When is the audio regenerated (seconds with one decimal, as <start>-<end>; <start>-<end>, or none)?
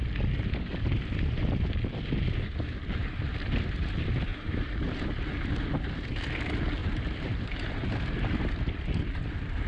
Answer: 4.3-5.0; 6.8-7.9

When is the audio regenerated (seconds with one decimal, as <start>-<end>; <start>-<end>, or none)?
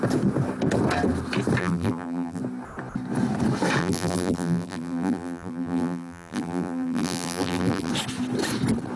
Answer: 1.6-2.4; 3.8-7.9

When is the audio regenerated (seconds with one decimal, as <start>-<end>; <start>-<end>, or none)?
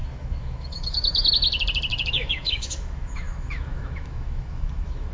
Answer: 0.0-1.3; 1.9-5.1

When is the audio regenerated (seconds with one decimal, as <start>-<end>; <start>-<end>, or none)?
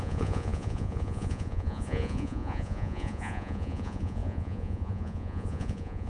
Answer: 0.0-6.1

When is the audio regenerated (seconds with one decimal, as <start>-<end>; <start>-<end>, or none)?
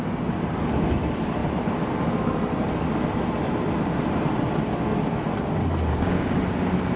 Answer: 5.9-6.4